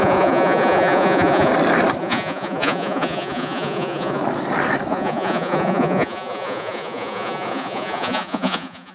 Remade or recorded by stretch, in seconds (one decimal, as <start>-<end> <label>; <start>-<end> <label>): 0.0-1.5 remade; 1.5-2.0 recorded; 2.0-4.2 remade; 4.2-4.9 recorded; 4.9-8.9 remade